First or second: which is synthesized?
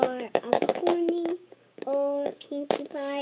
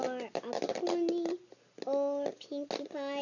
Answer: first